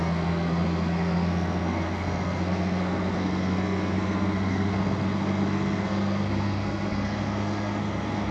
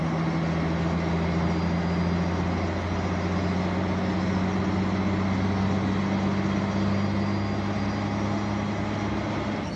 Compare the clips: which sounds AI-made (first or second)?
first